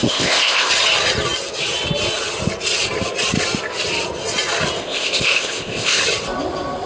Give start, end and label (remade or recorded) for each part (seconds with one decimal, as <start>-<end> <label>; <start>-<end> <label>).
0.0-0.7 remade; 0.7-4.8 recorded; 4.8-6.0 remade; 6.0-6.9 recorded